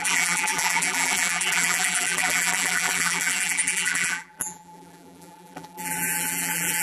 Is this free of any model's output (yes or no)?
no